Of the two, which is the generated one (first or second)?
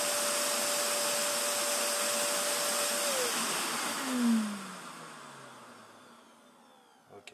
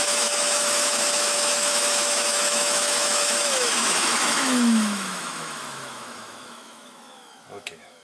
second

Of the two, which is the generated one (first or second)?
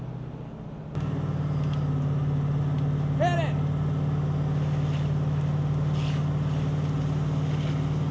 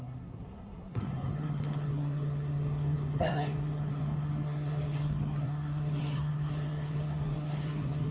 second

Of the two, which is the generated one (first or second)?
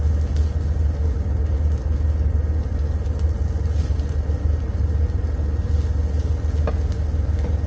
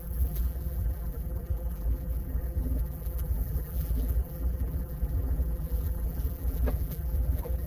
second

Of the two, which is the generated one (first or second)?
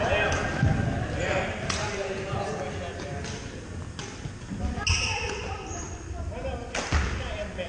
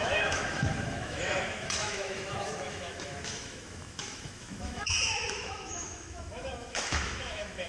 second